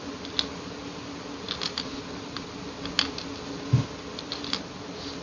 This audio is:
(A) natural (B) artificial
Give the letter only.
A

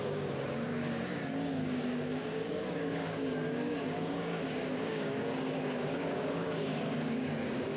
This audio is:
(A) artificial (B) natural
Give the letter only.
A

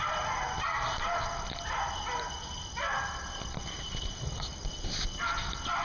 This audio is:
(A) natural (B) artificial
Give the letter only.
A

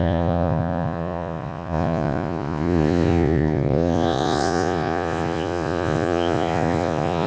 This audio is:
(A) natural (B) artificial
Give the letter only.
B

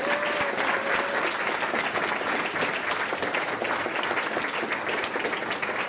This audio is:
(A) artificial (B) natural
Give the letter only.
B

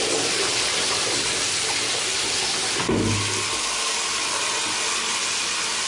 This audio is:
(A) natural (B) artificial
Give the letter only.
A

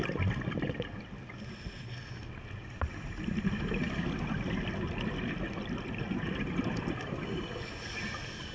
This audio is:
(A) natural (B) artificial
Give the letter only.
A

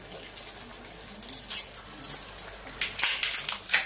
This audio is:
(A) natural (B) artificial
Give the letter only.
A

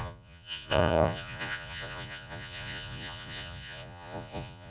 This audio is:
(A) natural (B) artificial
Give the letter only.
B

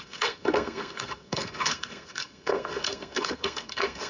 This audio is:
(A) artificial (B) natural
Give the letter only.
A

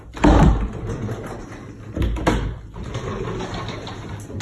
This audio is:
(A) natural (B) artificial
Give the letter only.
A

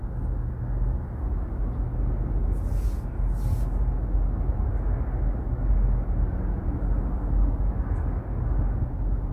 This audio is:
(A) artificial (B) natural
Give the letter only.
B